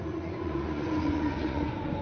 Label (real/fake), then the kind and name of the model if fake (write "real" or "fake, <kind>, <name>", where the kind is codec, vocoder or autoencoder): fake, vocoder, Vocos